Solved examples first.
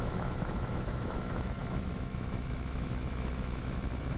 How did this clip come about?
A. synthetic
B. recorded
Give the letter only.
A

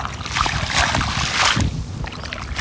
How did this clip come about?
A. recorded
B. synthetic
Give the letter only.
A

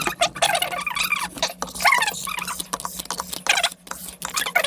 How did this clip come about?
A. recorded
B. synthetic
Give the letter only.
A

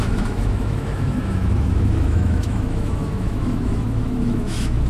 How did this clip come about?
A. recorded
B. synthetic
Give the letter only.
B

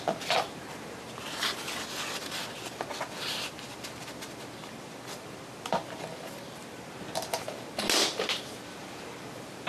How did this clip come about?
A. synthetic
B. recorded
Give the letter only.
B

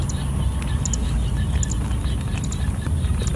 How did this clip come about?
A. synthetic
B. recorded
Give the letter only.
B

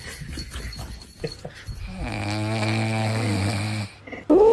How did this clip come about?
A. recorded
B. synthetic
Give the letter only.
A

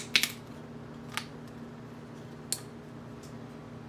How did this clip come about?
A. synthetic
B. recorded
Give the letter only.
B